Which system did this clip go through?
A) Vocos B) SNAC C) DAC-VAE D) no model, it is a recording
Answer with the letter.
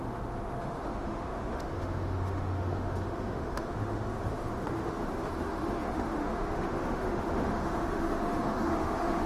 C